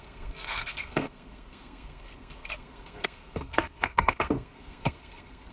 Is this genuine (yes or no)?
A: no